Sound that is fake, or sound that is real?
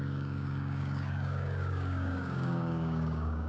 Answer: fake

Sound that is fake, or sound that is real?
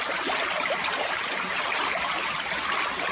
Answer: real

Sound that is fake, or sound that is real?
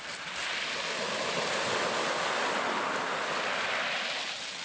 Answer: real